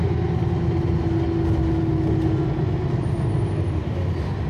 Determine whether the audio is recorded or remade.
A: recorded